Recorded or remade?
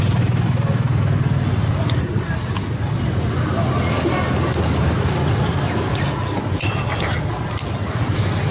recorded